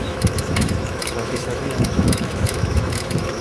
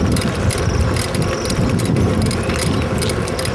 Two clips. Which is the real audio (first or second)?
second